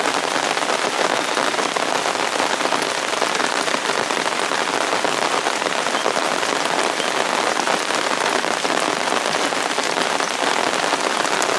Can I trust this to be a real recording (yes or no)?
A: yes